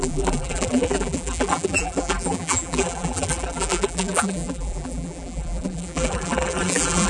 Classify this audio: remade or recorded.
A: remade